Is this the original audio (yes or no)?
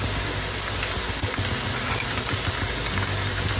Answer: yes